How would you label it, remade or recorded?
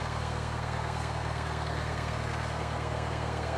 remade